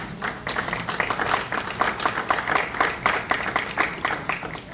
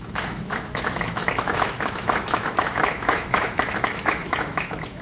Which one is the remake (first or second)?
second